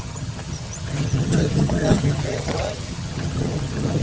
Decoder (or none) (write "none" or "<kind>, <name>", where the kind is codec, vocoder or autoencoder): vocoder, HiFi-GAN